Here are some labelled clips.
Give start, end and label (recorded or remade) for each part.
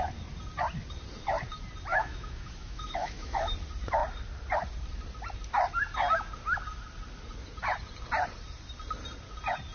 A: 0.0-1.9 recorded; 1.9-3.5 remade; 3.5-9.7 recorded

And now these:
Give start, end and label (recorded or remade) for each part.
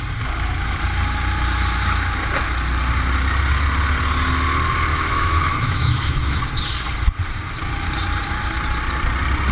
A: 0.0-4.9 recorded; 4.9-6.4 remade; 6.4-9.5 recorded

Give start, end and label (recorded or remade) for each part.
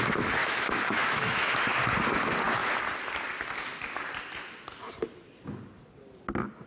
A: 0.0-0.4 recorded; 0.4-1.6 remade; 1.6-6.7 recorded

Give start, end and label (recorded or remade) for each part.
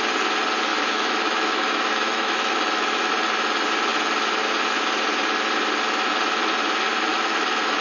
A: 0.0-0.7 recorded; 0.7-3.1 remade; 3.1-7.1 recorded; 7.1-7.8 remade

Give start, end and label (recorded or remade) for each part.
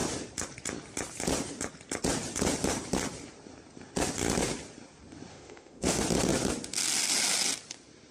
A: 0.0-5.3 recorded; 5.3-6.0 remade; 6.0-8.1 recorded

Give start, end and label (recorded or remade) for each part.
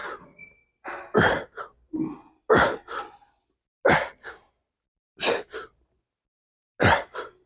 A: 0.0-7.5 recorded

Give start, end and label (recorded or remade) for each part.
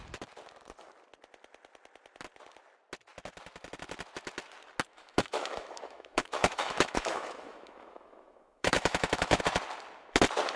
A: 0.0-4.9 recorded; 4.9-9.4 remade; 9.4-10.6 recorded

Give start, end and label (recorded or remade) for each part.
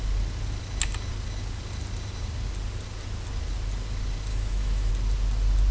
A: 0.0-4.3 recorded; 4.3-4.9 remade; 4.9-5.7 recorded